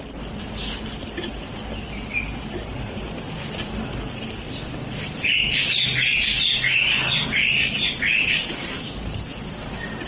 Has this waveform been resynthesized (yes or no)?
no